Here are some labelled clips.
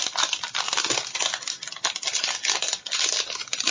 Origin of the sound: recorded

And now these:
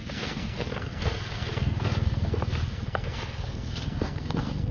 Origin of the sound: remade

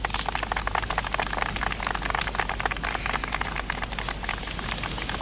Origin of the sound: recorded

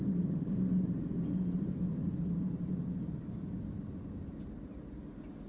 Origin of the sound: recorded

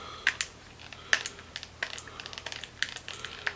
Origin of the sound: recorded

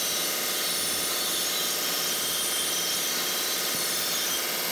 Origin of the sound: recorded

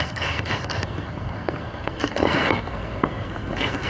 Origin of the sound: remade